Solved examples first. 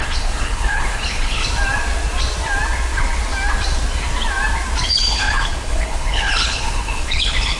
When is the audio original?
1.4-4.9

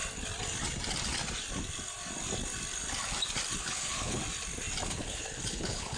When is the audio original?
0.0-3.6; 4.2-4.9